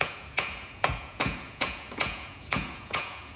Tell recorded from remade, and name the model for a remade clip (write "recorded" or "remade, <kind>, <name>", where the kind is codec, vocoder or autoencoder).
remade, vocoder, Vocos